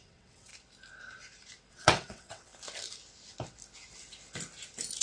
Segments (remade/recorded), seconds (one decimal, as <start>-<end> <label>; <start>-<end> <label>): 0.0-0.5 remade; 0.5-1.7 recorded; 1.7-2.5 remade; 2.5-5.0 recorded